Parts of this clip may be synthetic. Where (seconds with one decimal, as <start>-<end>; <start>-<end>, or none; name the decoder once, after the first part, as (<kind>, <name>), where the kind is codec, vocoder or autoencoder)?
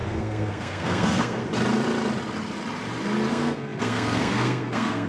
0.0-1.4 (codec, SNAC); 3.3-5.1